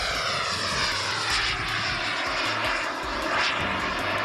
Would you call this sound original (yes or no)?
yes